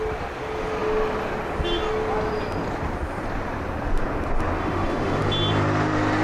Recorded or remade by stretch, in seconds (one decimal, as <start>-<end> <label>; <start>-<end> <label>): 0.0-4.6 recorded; 4.6-5.2 remade; 5.2-6.2 recorded